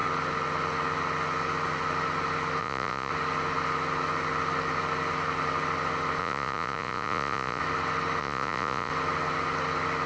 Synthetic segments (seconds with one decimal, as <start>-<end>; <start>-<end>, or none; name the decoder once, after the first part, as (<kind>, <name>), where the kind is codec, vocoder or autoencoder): 2.6-3.1 (vocoder, Vocos); 6.2-7.6; 8.2-8.9